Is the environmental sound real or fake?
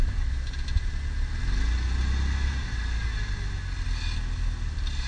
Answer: real